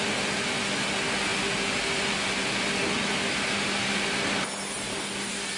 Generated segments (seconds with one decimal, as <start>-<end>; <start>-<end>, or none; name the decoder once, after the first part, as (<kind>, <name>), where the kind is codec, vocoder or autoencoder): none